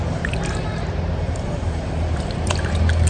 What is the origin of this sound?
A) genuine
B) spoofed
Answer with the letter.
B